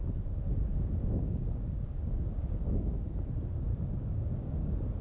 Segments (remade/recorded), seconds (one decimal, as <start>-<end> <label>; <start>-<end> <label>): 0.0-0.7 recorded; 0.7-2.9 remade; 2.9-3.7 recorded; 3.7-5.0 remade